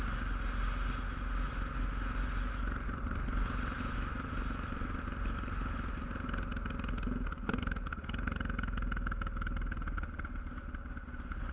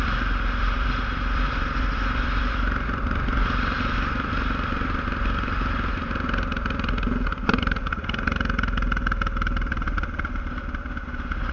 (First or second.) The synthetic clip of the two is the second